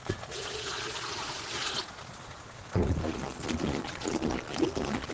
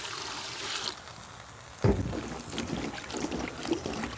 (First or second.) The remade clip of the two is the first